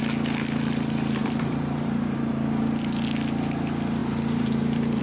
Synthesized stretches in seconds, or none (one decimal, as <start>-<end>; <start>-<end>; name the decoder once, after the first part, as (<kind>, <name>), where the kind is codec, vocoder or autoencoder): 1.2-2.3 (vocoder, BigVGAN v2); 4.0-5.0